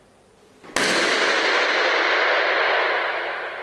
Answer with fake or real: real